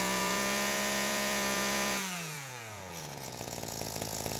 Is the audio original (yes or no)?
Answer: no